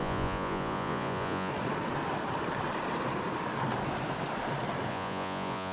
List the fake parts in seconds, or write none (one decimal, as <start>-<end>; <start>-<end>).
0.0-1.5; 4.9-5.7